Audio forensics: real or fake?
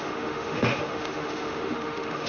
fake